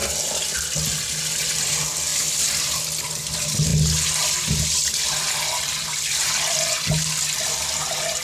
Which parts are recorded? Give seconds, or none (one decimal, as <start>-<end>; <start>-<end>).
0.0-8.2